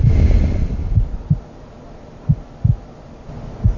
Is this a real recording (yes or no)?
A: yes